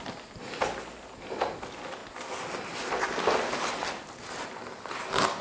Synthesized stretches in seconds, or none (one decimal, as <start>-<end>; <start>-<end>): none